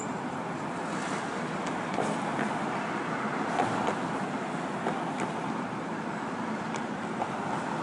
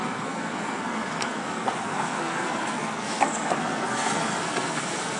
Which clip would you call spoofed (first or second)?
second